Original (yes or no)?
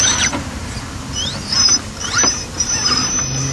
yes